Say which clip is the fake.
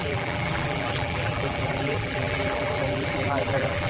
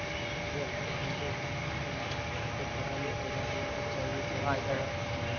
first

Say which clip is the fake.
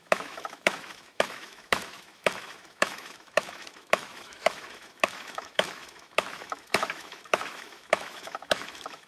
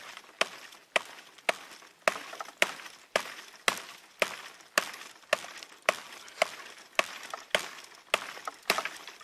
first